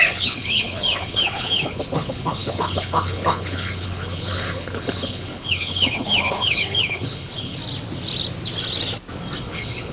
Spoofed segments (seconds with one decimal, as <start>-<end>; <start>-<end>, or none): 0.0-7.6; 9.4-9.9